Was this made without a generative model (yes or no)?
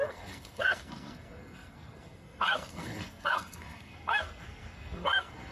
no